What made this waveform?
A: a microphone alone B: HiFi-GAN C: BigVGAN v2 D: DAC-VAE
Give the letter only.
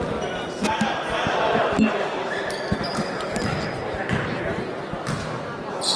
A